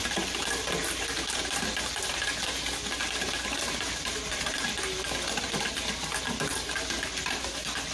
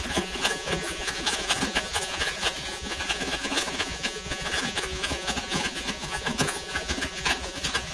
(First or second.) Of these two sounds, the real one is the first